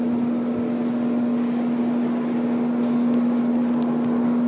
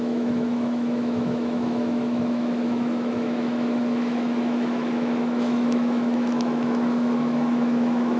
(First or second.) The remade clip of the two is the second